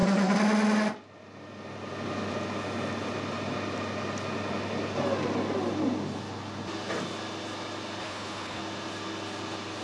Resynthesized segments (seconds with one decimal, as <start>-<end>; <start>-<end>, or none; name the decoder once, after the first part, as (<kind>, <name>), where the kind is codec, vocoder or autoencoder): 8.0-8.6 (codec, HILCodec)